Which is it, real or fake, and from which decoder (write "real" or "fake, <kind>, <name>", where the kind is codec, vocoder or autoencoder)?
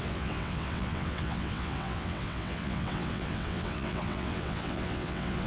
fake, vocoder, WaveNeXt